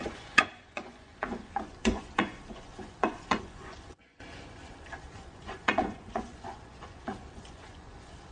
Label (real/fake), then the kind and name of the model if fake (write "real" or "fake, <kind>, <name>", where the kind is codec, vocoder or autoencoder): fake, vocoder, Vocos